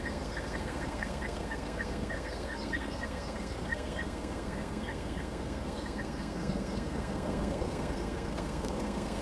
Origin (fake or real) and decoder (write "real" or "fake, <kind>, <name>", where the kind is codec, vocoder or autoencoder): fake, codec, SNAC